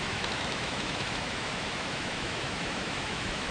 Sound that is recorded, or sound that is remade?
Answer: remade